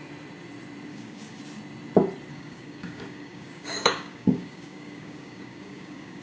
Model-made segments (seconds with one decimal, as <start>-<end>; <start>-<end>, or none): 0.9-1.4; 2.3-6.2